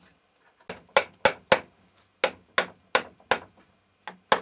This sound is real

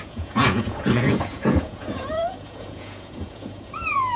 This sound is fake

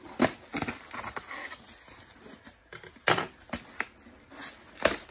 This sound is real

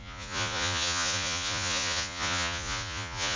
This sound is fake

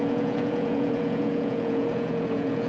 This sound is fake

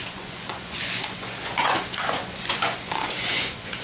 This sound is fake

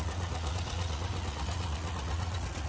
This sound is fake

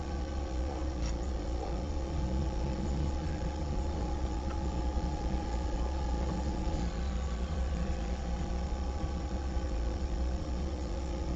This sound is fake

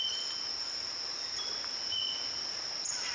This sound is real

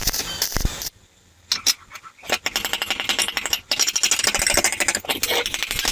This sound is real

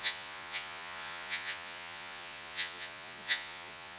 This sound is fake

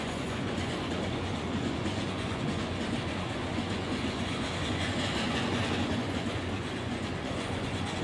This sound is fake